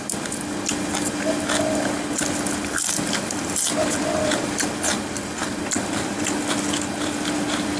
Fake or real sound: real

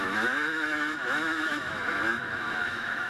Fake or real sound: fake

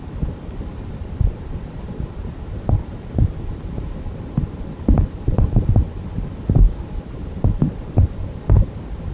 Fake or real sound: real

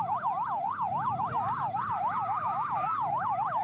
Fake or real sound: real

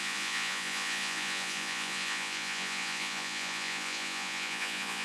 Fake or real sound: fake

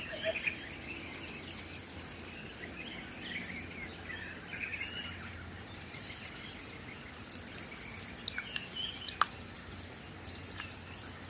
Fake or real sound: real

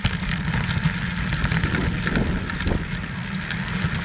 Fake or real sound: real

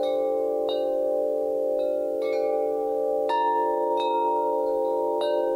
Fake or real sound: real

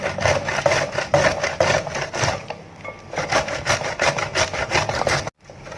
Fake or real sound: real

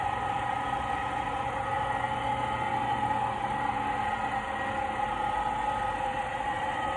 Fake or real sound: real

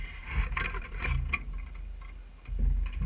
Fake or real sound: real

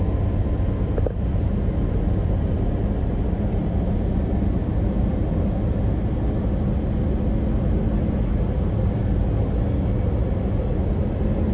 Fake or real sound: real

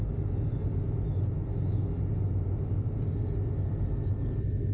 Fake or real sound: real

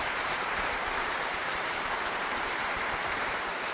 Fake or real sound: fake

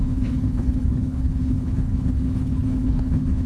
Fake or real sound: fake